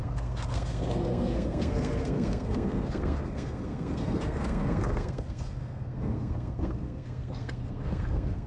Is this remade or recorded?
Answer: remade